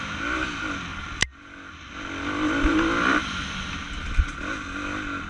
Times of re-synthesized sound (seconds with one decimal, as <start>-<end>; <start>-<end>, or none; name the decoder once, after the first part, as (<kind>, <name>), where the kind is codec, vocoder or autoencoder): 0.9-1.9 (vocoder, BigVGAN v2)